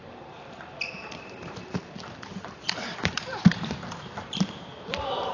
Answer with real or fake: fake